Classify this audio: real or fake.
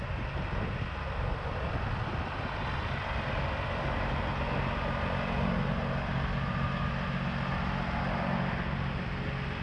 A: real